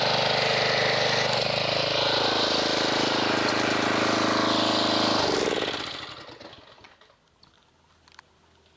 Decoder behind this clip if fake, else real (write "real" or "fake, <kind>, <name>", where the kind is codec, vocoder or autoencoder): real